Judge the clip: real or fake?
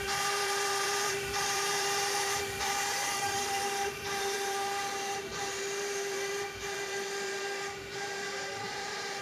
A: fake